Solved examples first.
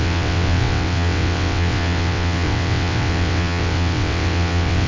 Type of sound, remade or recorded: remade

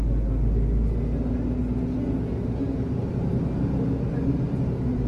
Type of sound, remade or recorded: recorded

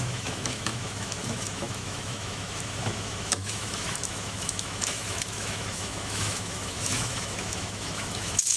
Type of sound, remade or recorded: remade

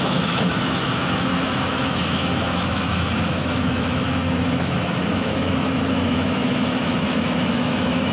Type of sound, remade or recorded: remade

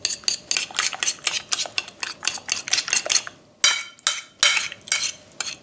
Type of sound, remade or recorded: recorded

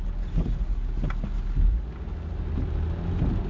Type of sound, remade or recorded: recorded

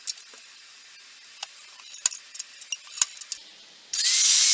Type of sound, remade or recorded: recorded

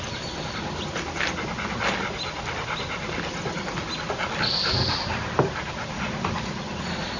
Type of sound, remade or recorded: recorded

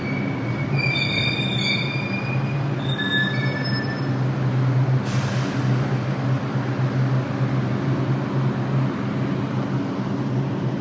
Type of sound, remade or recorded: recorded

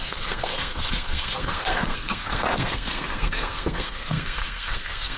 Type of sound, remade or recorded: remade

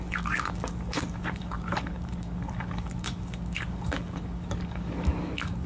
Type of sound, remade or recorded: remade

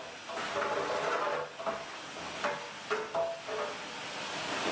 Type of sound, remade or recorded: recorded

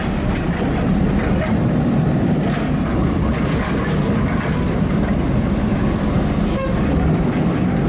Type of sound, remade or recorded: remade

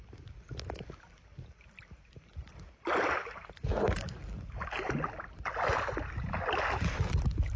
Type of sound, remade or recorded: recorded